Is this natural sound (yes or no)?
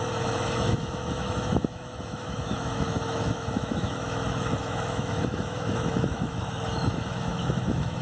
no